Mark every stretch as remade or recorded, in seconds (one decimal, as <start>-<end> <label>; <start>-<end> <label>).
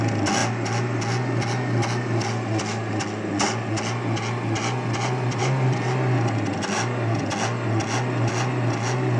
0.0-9.2 recorded